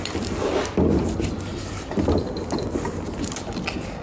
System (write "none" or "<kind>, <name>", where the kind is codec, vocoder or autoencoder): vocoder, BigVGAN v2